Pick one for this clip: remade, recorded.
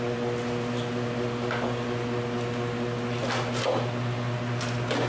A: recorded